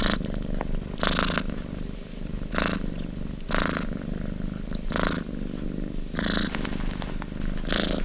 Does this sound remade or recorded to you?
recorded